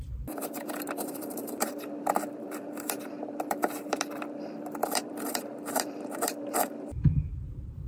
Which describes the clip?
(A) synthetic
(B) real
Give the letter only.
A